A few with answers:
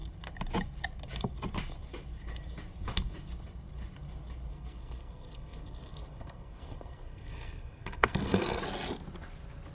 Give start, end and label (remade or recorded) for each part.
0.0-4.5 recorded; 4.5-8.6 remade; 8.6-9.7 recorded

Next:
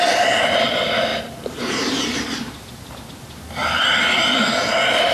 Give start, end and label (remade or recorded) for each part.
0.0-1.1 recorded; 1.1-4.2 remade; 4.2-5.1 recorded

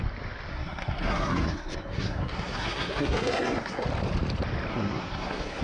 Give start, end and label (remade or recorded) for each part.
0.0-0.5 recorded; 0.5-3.9 remade; 3.9-4.7 recorded; 4.7-5.6 remade

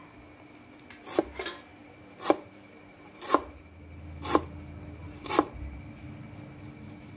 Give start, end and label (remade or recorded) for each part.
0.0-1.7 recorded; 1.7-3.6 remade; 3.6-7.2 recorded

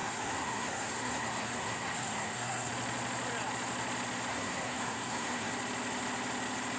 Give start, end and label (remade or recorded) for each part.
0.0-2.7 remade; 2.7-4.3 recorded; 4.3-5.5 remade; 5.5-6.8 recorded

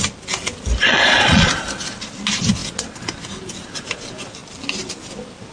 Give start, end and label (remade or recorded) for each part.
0.0-0.8 recorded; 0.8-1.5 remade; 1.5-5.5 recorded

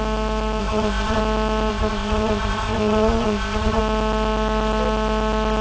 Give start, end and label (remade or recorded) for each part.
0.0-0.6 recorded; 0.6-1.2 remade; 1.2-1.7 recorded; 1.7-3.8 remade; 3.8-5.6 recorded

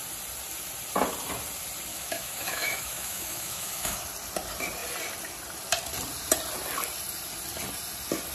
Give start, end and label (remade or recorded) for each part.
0.0-1.9 recorded; 1.9-4.0 remade; 4.0-8.3 recorded